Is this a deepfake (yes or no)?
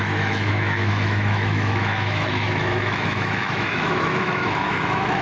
yes